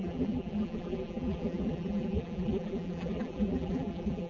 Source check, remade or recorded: remade